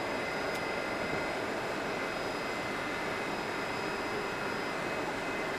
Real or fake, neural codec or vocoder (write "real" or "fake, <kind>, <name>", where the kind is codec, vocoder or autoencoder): real